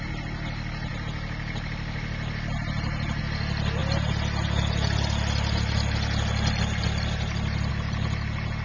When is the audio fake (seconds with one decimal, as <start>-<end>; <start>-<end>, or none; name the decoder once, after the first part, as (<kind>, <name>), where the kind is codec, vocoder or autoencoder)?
none

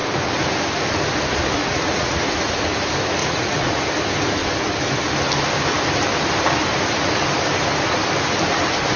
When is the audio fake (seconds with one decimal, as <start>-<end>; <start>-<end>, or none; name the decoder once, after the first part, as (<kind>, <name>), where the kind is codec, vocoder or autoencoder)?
1.6-2.2 (vocoder, Vocos); 3.2-3.8

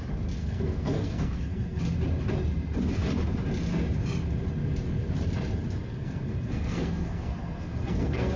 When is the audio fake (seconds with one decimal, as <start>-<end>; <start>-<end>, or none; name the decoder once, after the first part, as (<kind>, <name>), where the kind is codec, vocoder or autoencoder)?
0.4-1.8 (codec, SNAC); 5.9-8.4

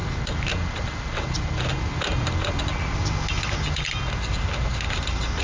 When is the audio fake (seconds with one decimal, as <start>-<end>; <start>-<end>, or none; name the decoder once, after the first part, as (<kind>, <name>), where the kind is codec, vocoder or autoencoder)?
none